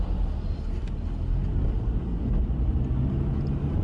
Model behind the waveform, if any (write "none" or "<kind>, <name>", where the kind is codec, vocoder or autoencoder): none